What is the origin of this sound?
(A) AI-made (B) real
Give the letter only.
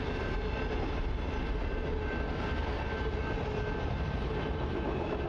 B